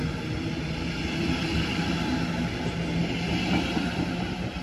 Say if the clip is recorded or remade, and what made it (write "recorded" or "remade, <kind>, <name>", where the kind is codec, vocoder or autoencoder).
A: recorded